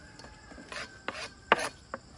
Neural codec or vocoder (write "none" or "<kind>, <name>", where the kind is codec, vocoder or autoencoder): none